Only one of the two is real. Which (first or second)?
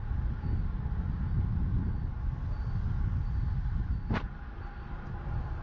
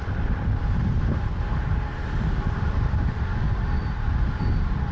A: first